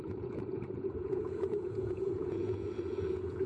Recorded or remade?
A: remade